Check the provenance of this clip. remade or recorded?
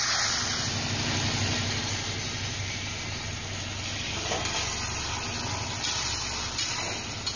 recorded